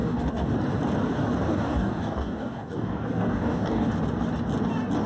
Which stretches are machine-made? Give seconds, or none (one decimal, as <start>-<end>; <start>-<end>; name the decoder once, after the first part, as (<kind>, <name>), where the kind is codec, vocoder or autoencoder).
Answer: 0.0-0.5 (codec, DAC); 1.5-3.9